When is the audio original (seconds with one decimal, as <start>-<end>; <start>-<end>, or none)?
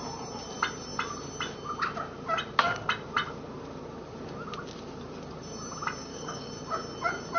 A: 0.0-6.0; 6.5-7.4